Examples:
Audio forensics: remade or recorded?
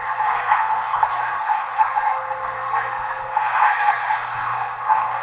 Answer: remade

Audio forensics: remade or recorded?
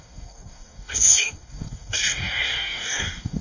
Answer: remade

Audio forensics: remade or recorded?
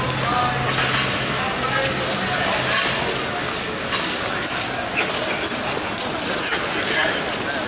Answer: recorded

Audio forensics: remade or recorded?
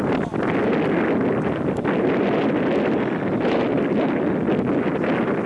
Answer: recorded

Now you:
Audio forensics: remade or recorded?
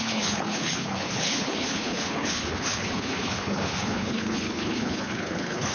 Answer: remade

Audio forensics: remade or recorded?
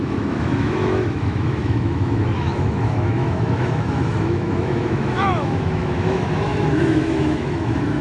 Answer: remade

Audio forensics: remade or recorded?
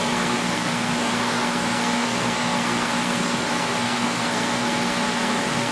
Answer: remade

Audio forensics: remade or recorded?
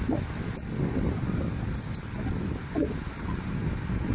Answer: recorded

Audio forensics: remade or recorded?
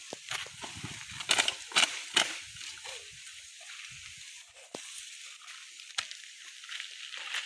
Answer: recorded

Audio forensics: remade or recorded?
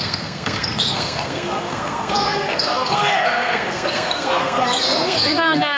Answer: remade